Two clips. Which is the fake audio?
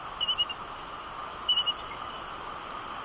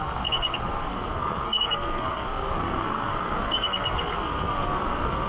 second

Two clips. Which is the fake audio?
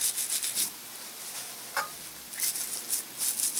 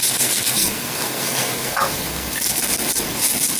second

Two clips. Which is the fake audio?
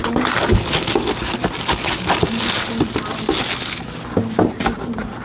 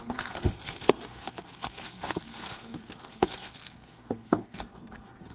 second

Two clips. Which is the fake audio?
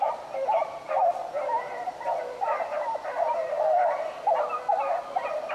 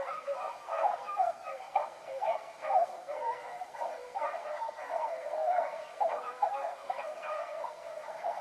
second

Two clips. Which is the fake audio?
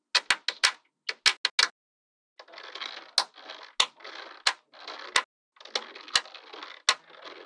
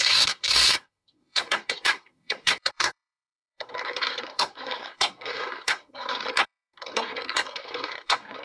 second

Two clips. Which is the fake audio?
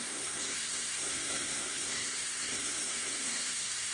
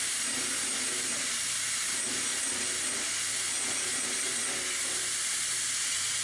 first